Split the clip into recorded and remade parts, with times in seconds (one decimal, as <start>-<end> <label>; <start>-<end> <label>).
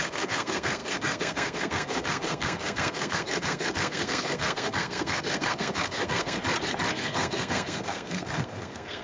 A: 0.0-6.4 remade; 6.4-6.9 recorded; 6.9-9.0 remade